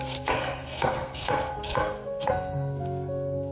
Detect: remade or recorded remade